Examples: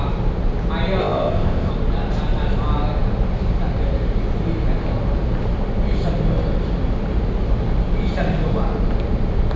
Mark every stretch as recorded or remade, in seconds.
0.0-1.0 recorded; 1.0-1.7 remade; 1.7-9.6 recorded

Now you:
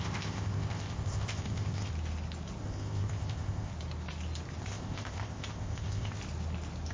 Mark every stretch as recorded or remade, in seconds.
0.0-1.9 remade; 1.9-2.6 recorded; 2.6-3.7 remade; 3.7-4.6 recorded; 4.6-6.2 remade; 6.2-6.9 recorded

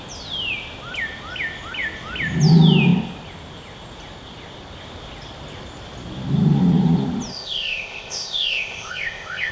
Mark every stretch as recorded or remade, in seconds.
0.0-7.3 recorded; 7.3-9.5 remade

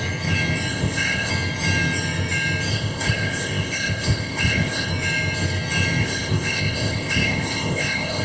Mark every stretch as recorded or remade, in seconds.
0.0-0.7 recorded; 0.7-1.3 remade; 1.3-2.7 recorded; 2.7-4.9 remade; 4.9-6.0 recorded; 6.0-8.2 remade